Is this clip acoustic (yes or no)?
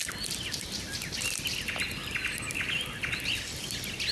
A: yes